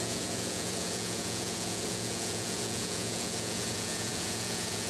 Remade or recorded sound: remade